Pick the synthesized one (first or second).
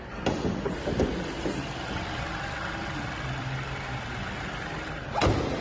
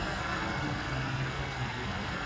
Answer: second